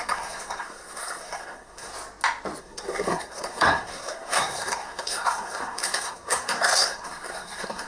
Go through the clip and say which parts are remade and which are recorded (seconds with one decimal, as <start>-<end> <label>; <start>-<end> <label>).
0.0-1.9 remade; 1.9-2.6 recorded; 2.6-7.9 remade